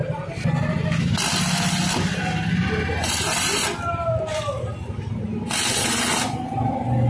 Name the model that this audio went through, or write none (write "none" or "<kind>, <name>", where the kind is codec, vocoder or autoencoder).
none